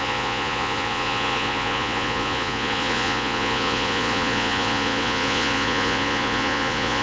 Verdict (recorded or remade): remade